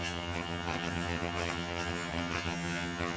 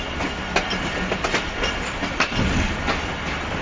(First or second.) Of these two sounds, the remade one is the first